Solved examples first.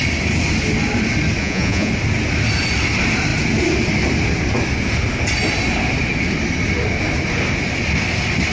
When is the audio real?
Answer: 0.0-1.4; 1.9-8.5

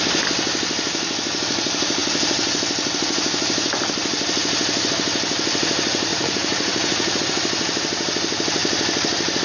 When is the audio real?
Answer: 0.0-6.1; 7.2-9.4

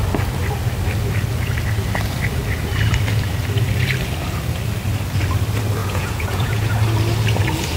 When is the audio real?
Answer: 0.0-5.8; 6.7-7.8

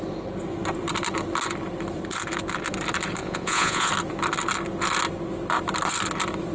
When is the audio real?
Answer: 0.0-3.2; 3.9-6.5

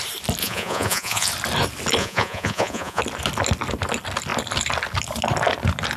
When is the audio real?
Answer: 0.0-0.4; 1.3-2.0; 3.0-6.0